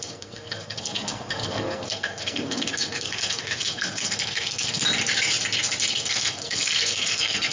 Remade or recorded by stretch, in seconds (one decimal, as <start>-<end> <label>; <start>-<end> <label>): 0.0-4.8 remade; 4.8-5.9 recorded; 5.9-7.5 remade